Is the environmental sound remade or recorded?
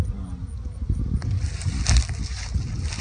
recorded